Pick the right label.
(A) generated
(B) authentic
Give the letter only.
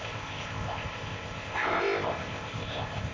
A